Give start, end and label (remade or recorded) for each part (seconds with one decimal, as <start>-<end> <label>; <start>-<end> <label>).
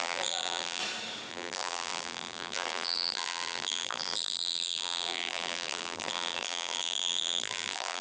0.0-0.8 remade; 0.8-1.3 recorded; 1.3-8.0 remade